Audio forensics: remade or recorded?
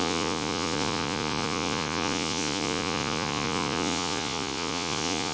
remade